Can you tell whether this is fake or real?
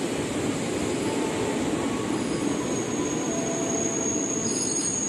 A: real